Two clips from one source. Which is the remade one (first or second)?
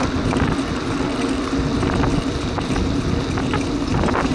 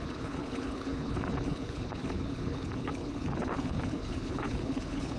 second